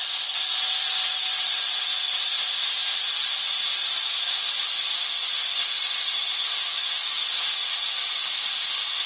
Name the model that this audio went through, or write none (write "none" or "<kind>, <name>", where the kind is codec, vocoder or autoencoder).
none